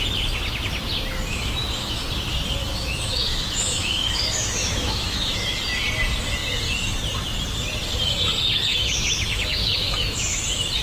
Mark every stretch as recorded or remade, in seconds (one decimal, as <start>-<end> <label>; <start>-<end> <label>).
0.0-1.3 recorded; 1.3-2.0 remade; 2.0-2.6 recorded; 2.6-5.6 remade; 5.6-8.7 recorded; 8.7-10.4 remade; 10.4-10.8 recorded